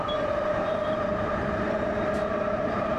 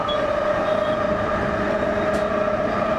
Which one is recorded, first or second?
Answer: second